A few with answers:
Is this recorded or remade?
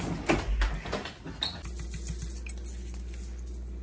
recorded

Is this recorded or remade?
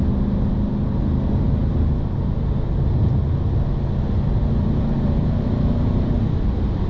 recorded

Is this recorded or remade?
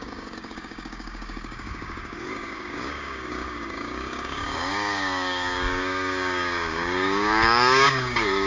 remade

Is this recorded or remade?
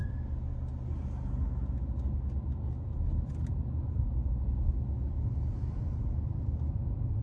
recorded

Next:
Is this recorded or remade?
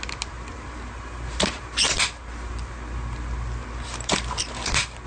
recorded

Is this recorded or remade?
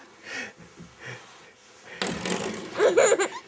recorded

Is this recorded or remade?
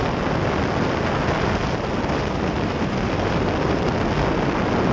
recorded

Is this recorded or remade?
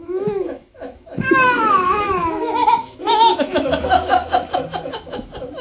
remade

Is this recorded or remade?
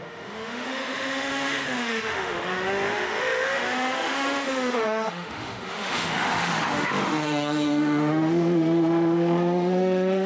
remade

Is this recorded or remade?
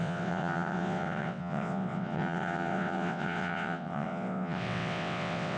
remade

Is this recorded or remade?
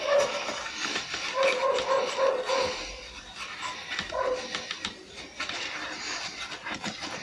recorded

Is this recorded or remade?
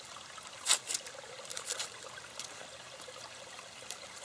recorded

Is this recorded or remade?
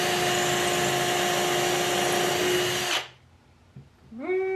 recorded